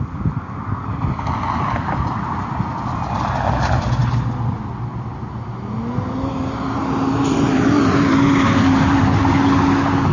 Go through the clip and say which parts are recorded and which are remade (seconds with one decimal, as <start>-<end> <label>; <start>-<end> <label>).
0.0-10.1 recorded